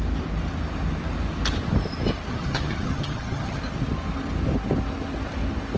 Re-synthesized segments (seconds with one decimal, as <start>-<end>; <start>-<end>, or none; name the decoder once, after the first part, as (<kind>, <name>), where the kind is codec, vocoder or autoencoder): 2.3-3.6 (vocoder, HiFi-GAN)